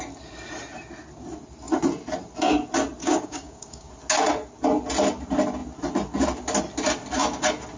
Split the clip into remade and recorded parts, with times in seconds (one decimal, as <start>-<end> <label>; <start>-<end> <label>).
0.0-3.0 recorded; 3.0-3.9 remade; 3.9-7.8 recorded